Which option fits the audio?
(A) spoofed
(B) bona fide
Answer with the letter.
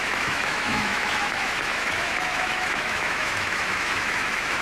A